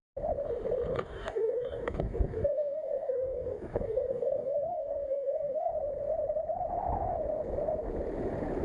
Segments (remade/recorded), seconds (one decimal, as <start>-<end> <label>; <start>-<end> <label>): 0.0-0.9 recorded; 0.9-5.7 remade; 5.7-8.6 recorded